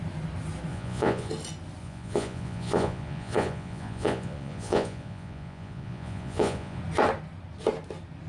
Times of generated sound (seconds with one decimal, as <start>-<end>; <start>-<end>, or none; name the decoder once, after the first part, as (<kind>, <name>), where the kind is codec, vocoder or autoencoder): 0.7-1.3 (vocoder, Vocos); 1.8-6.8